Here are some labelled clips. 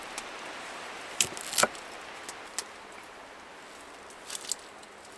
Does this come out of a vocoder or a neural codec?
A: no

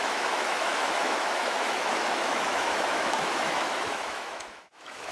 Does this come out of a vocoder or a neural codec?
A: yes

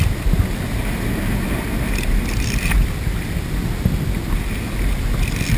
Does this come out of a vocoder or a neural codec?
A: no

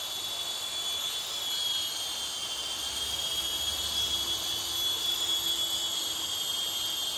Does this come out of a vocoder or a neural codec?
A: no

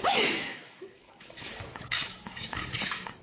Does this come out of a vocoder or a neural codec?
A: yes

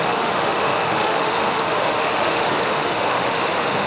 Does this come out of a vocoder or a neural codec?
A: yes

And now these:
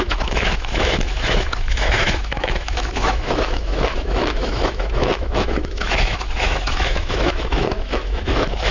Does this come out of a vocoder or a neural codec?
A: yes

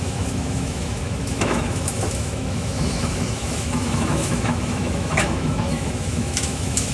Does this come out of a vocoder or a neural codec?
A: yes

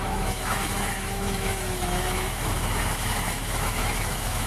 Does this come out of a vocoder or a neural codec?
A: yes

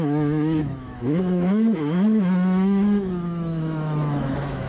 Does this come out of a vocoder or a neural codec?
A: yes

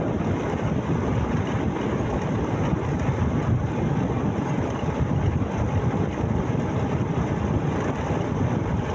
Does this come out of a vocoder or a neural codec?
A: no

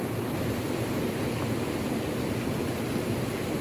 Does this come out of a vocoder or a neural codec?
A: no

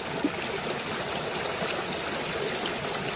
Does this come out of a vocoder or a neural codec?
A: no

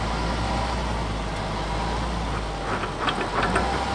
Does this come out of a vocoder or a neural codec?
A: no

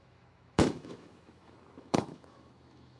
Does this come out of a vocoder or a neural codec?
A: yes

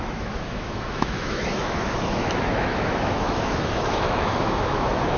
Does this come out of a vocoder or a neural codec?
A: yes